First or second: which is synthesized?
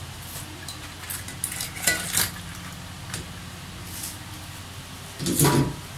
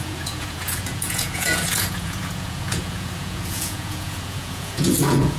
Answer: second